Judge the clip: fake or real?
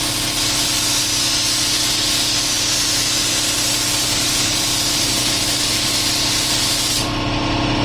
real